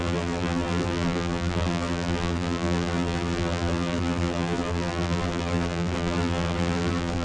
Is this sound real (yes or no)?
no